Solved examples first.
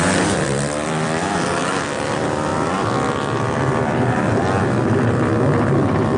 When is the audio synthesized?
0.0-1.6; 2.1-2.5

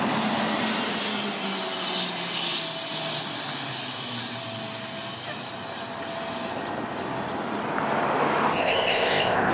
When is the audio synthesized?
8.6-9.5

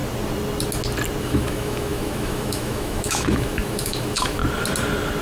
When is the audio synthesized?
1.2-4.4

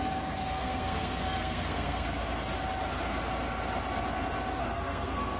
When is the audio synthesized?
0.0-2.2; 4.6-5.4

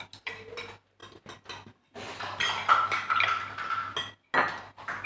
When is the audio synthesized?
none

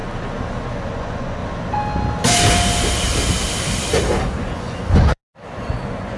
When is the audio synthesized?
0.9-1.4; 4.3-5.2; 5.8-6.2

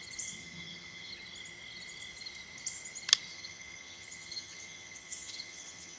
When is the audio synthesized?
0.4-1.1; 3.3-6.0

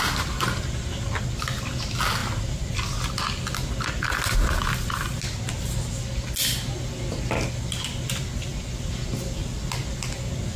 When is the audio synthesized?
none